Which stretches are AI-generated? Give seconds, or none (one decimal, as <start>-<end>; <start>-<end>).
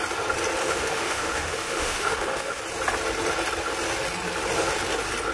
0.6-2.6